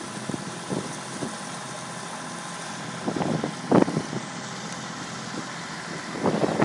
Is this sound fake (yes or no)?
no